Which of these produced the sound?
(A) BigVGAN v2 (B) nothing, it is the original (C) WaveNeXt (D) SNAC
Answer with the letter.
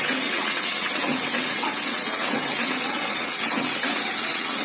C